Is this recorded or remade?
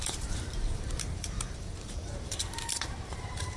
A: remade